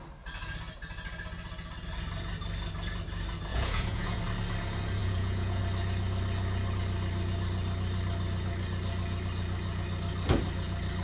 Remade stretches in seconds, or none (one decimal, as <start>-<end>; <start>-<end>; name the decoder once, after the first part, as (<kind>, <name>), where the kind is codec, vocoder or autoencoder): 3.5-4.2 (vocoder, Vocos); 5.0-5.6